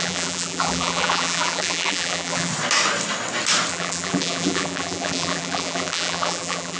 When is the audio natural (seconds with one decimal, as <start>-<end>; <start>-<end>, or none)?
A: 2.5-3.7